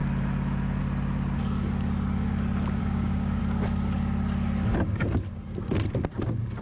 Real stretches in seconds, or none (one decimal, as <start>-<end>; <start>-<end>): 0.0-2.8; 3.4-6.6